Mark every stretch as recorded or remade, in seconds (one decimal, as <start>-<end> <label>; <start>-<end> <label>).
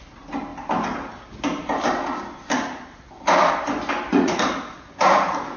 0.0-4.1 recorded; 4.1-5.6 remade